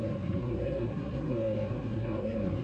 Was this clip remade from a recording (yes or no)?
yes